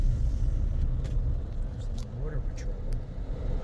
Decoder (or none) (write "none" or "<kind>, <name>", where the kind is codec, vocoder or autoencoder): none